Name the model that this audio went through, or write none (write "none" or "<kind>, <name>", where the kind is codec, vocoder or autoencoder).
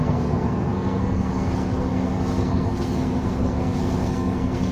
codec, SNAC